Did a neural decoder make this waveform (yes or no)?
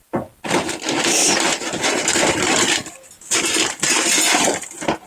no